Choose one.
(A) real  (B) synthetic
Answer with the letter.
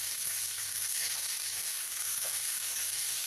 B